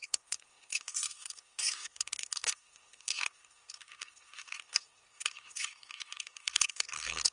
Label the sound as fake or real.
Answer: fake